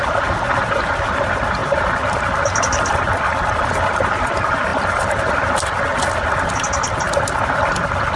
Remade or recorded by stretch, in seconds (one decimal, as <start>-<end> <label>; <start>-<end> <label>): 0.0-4.7 recorded; 4.7-5.3 remade; 5.3-8.2 recorded